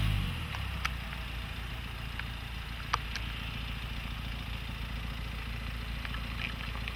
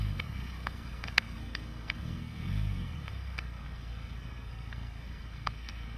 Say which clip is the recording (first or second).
first